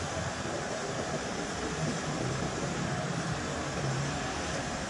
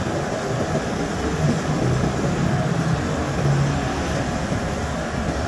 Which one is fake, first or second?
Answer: first